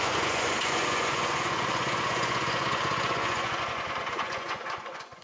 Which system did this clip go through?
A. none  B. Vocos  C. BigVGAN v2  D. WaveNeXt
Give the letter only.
B